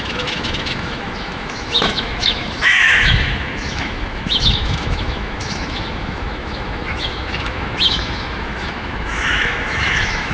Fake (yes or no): yes